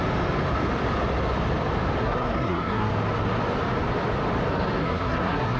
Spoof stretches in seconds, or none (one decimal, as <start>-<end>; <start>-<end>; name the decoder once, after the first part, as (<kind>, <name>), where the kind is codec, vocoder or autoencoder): 2.0-2.9 (codec, SNAC); 4.8-5.6